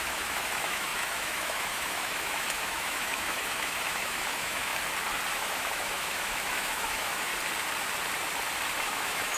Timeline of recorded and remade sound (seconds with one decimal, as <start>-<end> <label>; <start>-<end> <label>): 0.0-4.7 remade; 4.7-5.3 recorded; 5.3-7.3 remade; 7.3-8.8 recorded; 8.8-9.4 remade